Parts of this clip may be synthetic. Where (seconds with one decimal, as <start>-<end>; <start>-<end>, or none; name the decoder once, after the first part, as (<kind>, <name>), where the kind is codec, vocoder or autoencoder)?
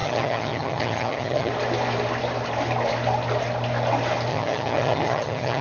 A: 0.0-1.5 (vocoder, HiFi-GAN); 4.3-5.6